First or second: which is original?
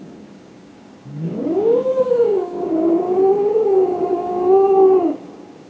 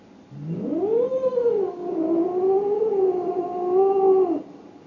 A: second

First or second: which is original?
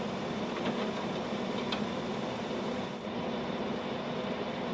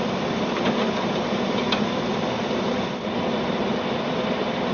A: first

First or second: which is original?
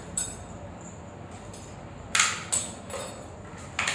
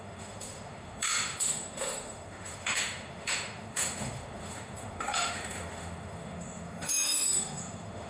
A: first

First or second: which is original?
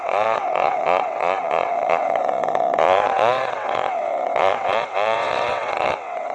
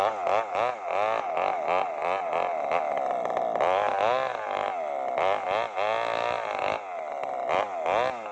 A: second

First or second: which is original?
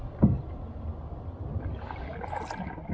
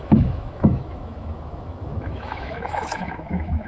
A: first